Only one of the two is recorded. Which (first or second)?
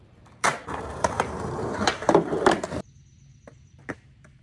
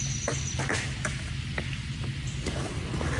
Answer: second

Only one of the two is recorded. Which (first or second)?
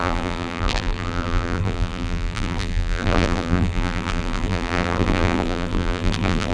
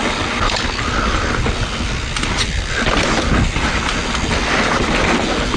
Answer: second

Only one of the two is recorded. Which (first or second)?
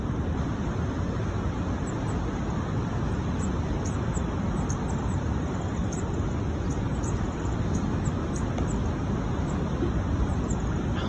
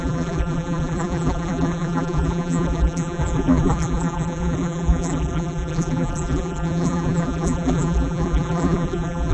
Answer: first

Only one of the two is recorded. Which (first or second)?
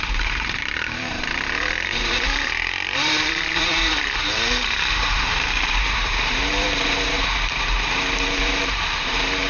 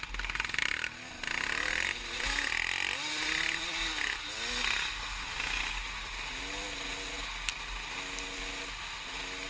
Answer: second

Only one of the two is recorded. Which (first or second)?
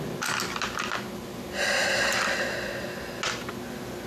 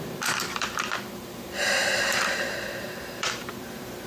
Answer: first